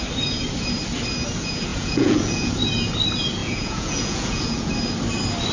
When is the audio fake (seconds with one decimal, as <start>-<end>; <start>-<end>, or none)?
1.7-2.5; 3.4-4.7